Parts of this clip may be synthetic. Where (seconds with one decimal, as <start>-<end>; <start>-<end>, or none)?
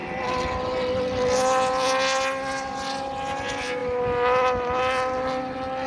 none